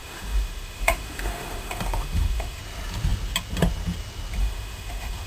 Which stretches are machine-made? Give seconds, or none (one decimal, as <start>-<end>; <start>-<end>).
0.0-2.6; 4.4-5.3